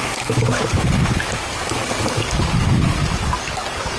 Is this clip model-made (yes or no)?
yes